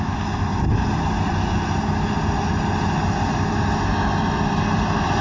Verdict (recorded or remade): recorded